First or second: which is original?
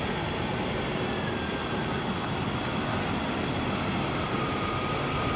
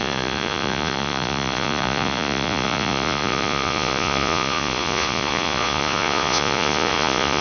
first